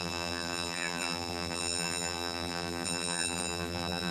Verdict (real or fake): fake